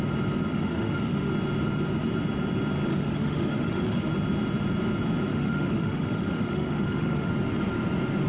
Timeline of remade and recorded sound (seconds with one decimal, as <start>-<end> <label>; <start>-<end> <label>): 0.0-0.5 recorded; 0.5-1.3 remade; 1.3-2.9 recorded; 2.9-4.1 remade; 4.1-5.3 recorded; 5.3-7.3 remade; 7.3-8.3 recorded